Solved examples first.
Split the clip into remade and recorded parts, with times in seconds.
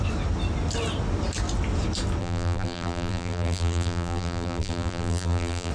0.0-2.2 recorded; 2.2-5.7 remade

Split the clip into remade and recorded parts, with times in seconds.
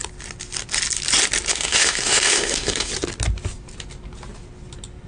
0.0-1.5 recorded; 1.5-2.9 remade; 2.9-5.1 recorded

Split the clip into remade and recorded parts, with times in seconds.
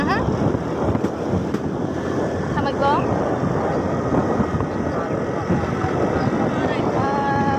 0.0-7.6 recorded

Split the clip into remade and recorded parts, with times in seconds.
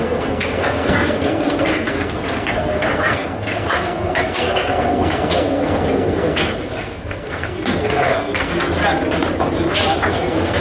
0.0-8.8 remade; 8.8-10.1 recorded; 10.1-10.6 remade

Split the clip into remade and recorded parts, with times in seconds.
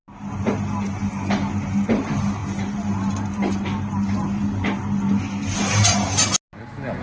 0.0-7.0 recorded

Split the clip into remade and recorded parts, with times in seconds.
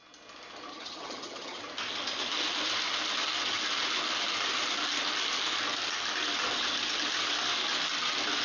0.0-0.7 recorded; 0.7-1.6 remade; 1.6-8.4 recorded